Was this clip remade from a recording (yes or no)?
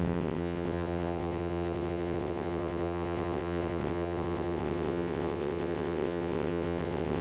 yes